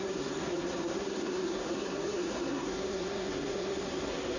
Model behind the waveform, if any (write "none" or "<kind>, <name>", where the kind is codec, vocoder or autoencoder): codec, SNAC